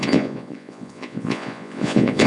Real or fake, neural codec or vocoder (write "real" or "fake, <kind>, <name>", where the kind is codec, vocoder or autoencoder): fake, vocoder, Vocos